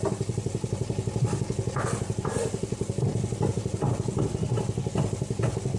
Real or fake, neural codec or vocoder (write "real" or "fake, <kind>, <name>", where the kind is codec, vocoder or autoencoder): real